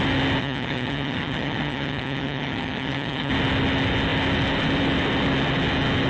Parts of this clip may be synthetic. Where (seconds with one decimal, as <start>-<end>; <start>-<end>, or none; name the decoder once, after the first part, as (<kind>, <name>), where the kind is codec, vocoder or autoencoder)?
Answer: 0.4-3.3 (vocoder, HiFi-GAN)